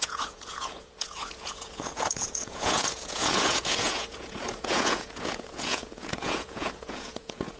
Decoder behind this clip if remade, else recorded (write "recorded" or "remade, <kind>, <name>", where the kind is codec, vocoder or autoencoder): remade, vocoder, Vocos